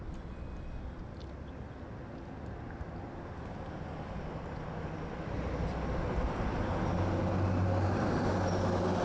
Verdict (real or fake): real